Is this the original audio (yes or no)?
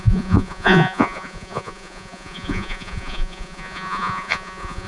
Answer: no